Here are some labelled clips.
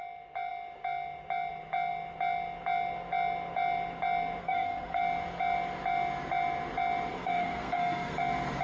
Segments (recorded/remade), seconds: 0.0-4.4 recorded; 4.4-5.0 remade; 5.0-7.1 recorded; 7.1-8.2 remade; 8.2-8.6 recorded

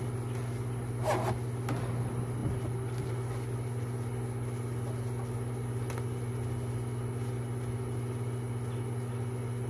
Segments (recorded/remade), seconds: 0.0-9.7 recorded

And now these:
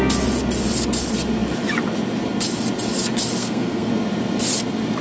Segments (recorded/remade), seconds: 0.0-3.4 recorded; 3.4-3.9 remade; 3.9-5.0 recorded

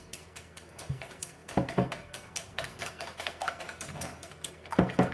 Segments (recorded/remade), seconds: 0.0-5.1 remade

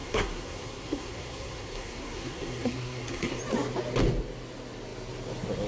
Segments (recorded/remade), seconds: 0.0-3.4 remade; 3.4-5.7 recorded

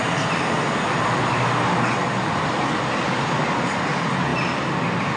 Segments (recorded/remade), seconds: 0.0-5.2 recorded

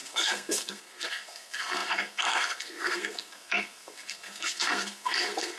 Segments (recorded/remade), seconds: 0.0-5.6 remade

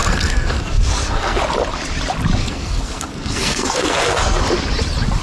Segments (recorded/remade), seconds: 0.0-1.4 remade; 1.4-2.4 recorded; 2.4-4.4 remade; 4.4-5.2 recorded